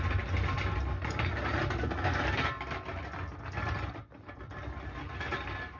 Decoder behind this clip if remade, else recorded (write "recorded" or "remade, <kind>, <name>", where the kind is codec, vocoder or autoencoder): recorded